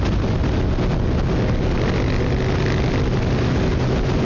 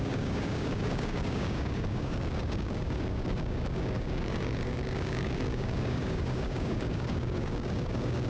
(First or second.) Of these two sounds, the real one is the first